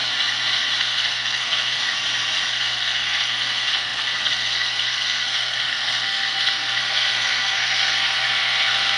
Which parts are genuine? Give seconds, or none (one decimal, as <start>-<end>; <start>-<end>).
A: 0.0-0.8; 1.8-2.5